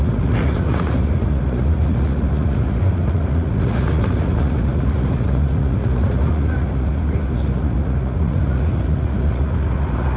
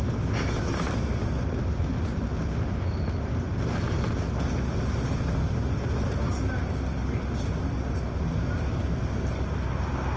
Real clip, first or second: second